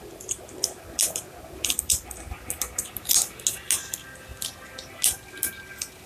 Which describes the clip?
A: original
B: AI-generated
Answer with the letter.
A